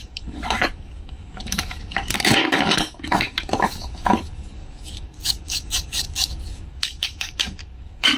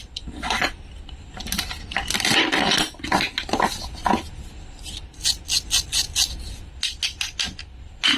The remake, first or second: first